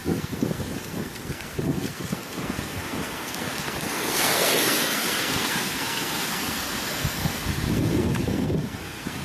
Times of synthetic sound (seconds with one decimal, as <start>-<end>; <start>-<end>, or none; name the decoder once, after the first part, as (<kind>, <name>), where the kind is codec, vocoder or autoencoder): 0.0-9.2 (codec, SNAC)